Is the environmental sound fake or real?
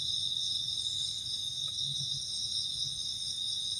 real